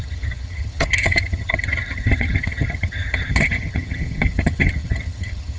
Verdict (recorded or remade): remade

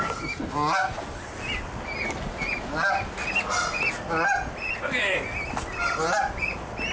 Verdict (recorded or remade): recorded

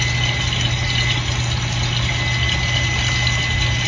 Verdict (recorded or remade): recorded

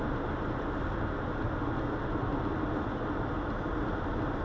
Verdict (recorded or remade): recorded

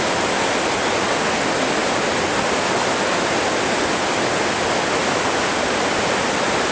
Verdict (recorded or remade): recorded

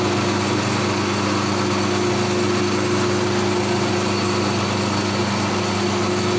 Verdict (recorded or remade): recorded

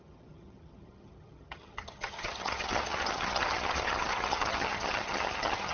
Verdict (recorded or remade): remade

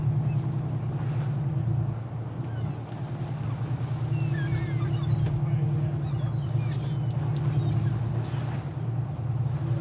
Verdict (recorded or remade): recorded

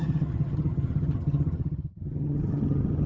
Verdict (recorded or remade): remade